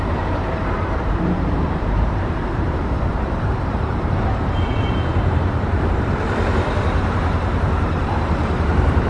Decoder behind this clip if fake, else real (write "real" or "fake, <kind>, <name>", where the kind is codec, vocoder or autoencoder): fake, vocoder, BigVGAN v2